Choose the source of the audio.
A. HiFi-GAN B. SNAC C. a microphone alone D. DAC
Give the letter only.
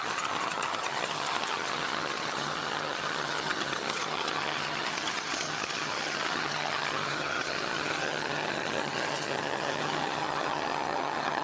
A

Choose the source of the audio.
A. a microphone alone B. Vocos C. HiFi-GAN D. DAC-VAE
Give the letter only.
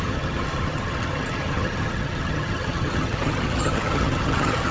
C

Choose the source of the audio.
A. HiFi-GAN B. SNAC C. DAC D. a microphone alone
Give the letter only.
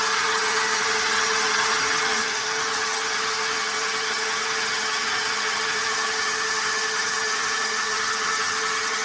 A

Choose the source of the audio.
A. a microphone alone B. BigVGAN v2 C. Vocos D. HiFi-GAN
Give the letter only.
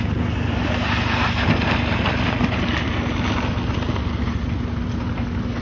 A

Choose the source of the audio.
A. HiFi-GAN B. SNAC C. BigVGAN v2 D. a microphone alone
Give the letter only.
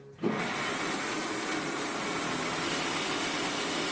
D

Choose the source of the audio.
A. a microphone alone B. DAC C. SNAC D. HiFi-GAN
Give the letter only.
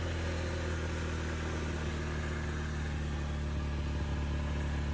A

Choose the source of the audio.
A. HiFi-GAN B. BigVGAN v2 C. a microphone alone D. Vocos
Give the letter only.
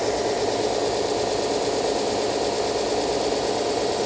C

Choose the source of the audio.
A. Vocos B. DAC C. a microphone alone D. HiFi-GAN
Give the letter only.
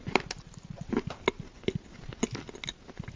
C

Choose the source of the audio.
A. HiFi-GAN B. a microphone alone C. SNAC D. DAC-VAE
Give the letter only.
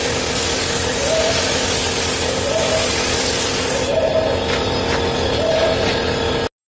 B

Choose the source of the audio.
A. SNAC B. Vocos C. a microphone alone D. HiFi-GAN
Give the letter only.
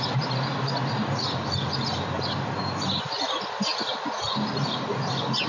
C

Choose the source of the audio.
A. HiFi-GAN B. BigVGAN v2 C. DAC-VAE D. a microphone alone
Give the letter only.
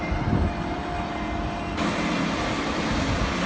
D